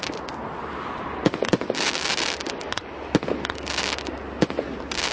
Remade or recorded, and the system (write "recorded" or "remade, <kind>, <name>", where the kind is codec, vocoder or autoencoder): recorded